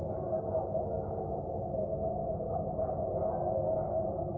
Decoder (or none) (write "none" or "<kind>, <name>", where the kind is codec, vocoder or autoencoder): none